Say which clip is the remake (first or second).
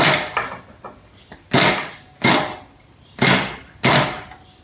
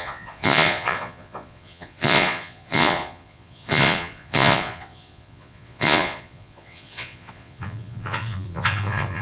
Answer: second